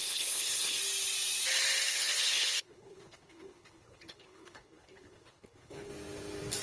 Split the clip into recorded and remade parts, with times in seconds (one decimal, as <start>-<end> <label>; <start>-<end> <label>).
0.0-0.8 remade; 0.8-1.9 recorded; 1.9-5.9 remade; 5.9-6.6 recorded